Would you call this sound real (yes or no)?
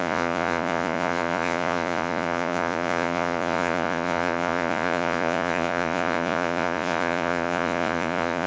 no